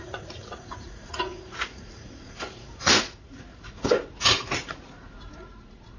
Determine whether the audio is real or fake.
fake